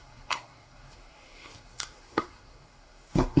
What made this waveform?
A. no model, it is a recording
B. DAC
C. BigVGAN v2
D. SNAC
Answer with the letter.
D